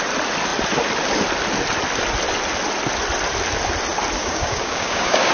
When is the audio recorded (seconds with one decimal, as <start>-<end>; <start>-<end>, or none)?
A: 0.0-4.2